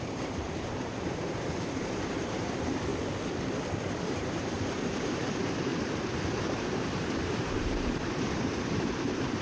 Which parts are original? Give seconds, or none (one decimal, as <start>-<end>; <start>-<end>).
2.9-4.0; 5.7-6.2